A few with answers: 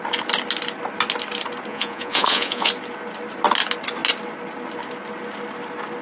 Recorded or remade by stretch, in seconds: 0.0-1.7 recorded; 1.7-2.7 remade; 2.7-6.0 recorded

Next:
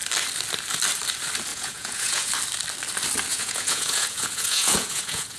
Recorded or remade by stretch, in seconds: 0.0-1.5 recorded; 1.5-2.3 remade; 2.3-3.3 recorded; 3.3-5.4 remade

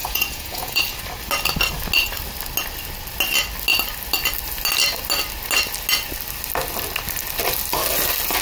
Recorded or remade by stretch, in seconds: 0.0-0.8 remade; 0.8-8.4 recorded

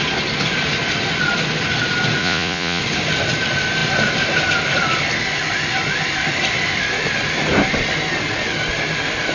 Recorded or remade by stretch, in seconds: 0.0-2.2 recorded; 2.2-2.8 remade; 2.8-9.3 recorded

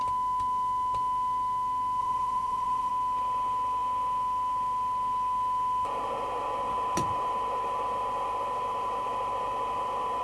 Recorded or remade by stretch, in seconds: 0.0-2.0 recorded; 2.0-2.9 remade; 2.9-10.2 recorded

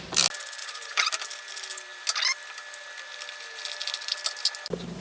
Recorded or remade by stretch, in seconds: 0.0-0.6 recorded; 0.6-1.1 remade; 1.1-5.0 recorded

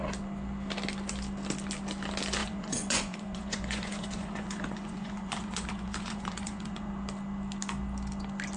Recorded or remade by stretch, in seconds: 0.0-2.4 recorded; 2.4-6.9 remade; 6.9-8.6 recorded

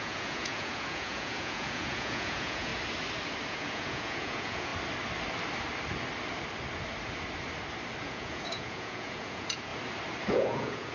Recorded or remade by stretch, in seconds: 0.0-2.7 remade; 2.7-3.5 recorded; 3.5-4.7 remade; 4.7-8.0 recorded; 8.0-9.7 remade; 9.7-10.3 recorded; 10.3-10.9 remade